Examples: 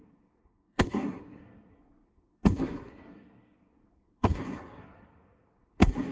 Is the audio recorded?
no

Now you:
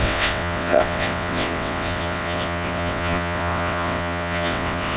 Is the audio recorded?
no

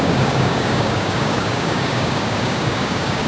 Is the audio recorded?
no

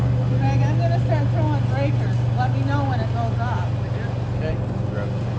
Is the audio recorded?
yes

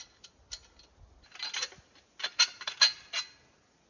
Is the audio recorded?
yes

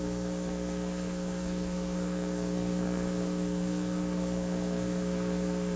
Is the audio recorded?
no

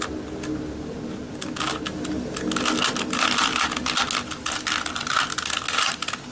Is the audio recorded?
yes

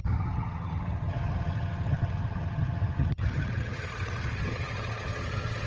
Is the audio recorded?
no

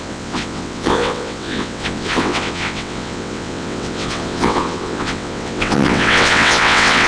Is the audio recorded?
no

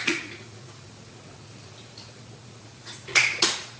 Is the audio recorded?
no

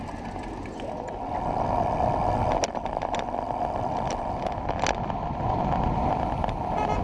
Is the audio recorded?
yes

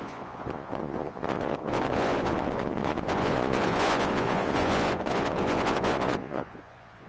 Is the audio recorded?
no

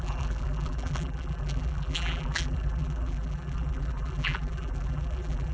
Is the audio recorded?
no